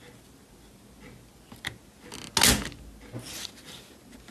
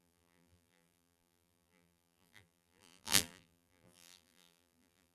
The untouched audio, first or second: first